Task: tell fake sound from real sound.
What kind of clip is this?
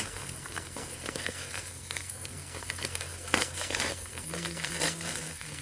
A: fake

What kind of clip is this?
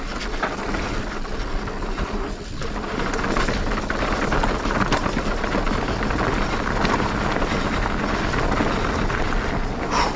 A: real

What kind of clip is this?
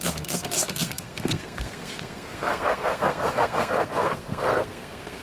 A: fake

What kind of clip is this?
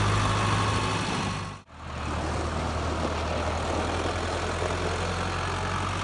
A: real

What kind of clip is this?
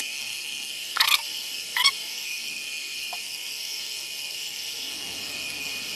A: fake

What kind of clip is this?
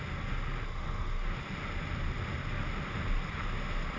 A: real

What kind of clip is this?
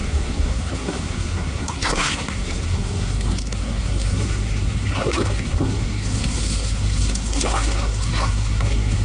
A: fake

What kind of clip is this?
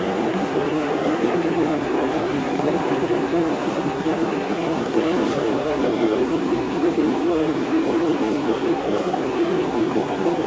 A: fake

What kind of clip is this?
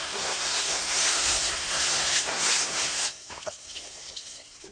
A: fake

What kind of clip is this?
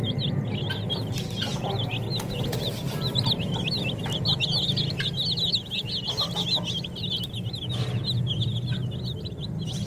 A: real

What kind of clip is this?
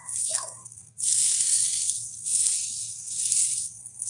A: fake